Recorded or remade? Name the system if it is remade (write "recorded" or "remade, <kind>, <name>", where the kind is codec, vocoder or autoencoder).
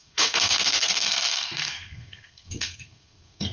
remade, codec, SNAC